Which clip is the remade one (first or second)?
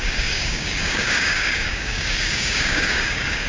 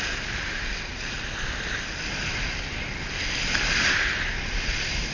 first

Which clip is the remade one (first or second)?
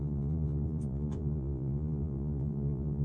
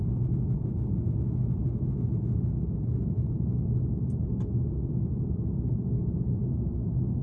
first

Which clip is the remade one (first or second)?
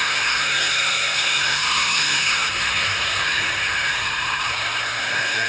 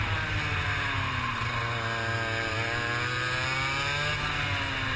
first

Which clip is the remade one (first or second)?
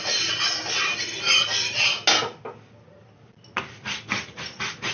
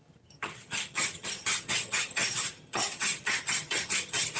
second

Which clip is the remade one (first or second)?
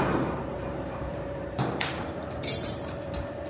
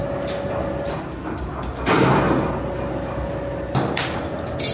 first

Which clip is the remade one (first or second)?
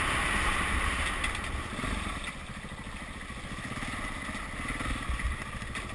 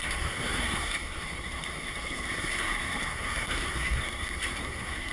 second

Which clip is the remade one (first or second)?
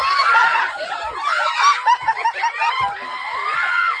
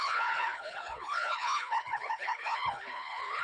second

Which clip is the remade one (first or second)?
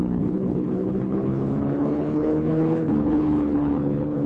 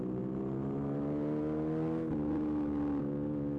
first